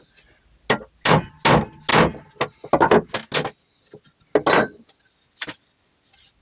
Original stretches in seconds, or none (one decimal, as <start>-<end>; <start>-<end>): 0.0-6.4